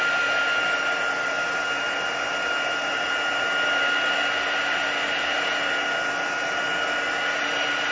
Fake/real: real